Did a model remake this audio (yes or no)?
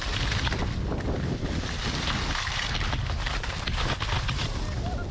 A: no